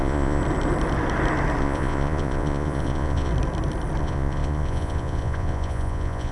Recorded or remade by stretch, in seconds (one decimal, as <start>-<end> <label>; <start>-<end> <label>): 0.0-0.4 remade; 0.4-1.6 recorded; 1.6-3.3 remade; 3.3-4.0 recorded; 4.0-6.3 remade